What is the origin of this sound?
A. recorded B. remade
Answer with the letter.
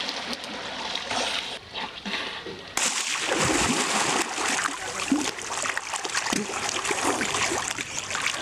A